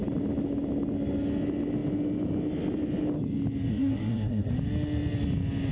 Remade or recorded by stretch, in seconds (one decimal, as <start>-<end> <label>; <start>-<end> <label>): 0.0-3.7 recorded; 3.7-4.5 remade; 4.5-5.7 recorded